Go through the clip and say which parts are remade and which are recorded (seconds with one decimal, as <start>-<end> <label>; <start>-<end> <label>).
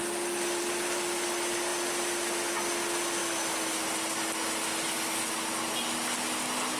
0.0-6.8 recorded